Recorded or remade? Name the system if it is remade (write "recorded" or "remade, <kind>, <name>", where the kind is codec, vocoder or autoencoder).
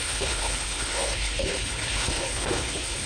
remade, codec, HILCodec